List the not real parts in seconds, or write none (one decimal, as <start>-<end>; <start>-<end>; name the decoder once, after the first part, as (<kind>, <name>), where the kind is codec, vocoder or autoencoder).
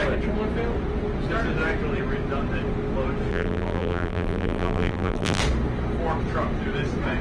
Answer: 3.3-5.4 (vocoder, BigVGAN v2)